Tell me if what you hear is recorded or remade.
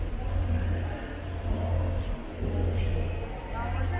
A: recorded